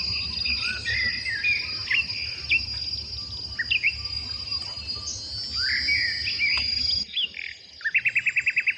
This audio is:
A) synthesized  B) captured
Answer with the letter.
B